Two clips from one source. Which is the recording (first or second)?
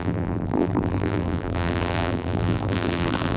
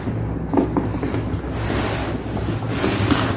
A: second